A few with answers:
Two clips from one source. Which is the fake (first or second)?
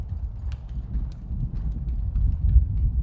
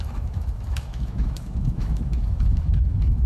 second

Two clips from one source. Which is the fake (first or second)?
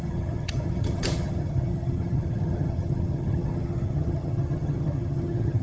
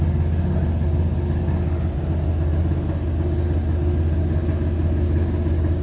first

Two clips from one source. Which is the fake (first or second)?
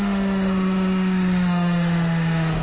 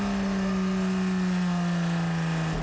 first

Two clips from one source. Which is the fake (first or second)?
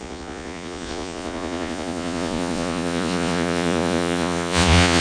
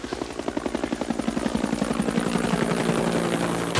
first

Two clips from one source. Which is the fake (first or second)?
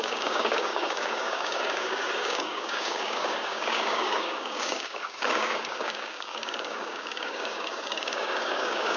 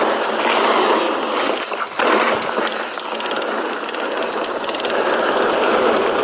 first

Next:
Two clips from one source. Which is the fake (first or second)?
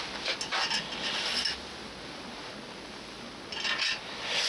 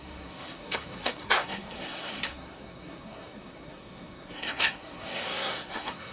second